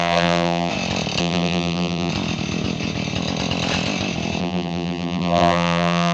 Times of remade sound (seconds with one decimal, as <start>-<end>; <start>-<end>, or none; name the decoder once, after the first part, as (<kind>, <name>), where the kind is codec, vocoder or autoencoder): 0.0-0.7 (vocoder, BigVGAN v2); 1.2-2.1; 4.4-6.1